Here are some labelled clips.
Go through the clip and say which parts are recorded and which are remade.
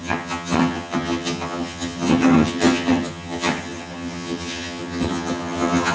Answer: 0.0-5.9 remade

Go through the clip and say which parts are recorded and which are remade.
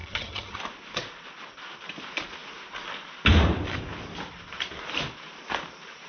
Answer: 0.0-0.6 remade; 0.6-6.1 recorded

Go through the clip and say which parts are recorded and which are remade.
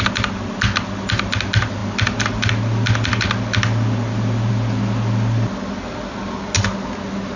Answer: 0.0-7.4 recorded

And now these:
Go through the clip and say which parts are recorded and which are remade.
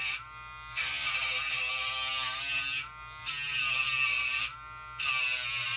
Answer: 0.0-5.8 recorded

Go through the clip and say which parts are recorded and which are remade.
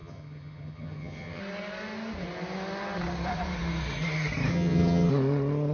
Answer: 0.0-1.4 remade; 1.4-4.5 recorded; 4.5-5.1 remade; 5.1-5.7 recorded